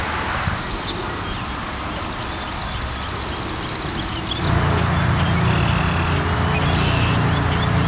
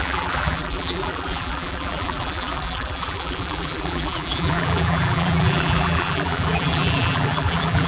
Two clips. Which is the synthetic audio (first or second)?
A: second